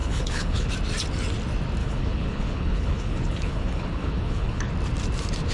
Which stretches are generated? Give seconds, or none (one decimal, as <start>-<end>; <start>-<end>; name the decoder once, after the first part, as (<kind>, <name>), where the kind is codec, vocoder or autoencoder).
0.0-0.7 (codec, HILCodec); 1.8-4.7